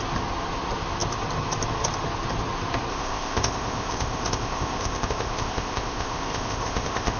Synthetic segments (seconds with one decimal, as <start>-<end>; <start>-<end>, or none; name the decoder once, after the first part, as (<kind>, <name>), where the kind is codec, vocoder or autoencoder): 2.9-7.2 (codec, ZipCodec)